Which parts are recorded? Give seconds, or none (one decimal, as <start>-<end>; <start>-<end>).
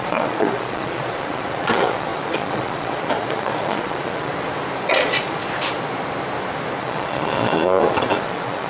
4.3-4.9; 5.4-6.8